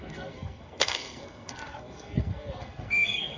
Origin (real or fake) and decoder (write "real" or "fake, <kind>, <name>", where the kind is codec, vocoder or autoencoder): fake, codec, SNAC